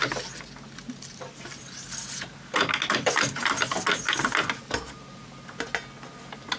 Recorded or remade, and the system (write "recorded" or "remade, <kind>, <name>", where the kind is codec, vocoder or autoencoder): recorded